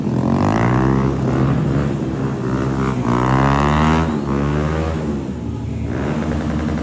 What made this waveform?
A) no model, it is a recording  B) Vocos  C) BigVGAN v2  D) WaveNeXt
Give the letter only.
A